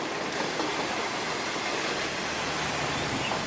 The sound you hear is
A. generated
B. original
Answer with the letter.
B